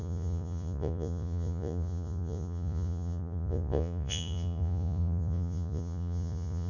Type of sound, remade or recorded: remade